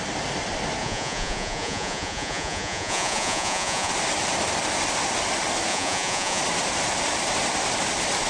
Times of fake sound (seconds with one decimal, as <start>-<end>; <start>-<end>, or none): 0.8-3.9; 5.7-6.4